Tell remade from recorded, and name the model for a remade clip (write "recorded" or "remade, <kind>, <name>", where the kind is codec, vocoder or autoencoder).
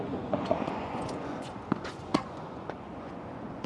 remade, vocoder, Vocos